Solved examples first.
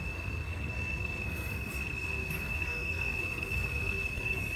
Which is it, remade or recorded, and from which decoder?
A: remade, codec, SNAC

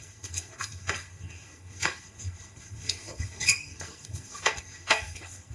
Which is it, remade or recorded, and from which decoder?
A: remade, codec, SNAC